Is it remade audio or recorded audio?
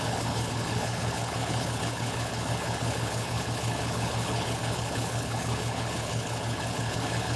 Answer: remade